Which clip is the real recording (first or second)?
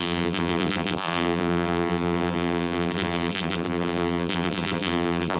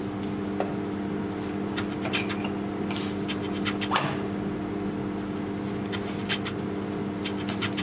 second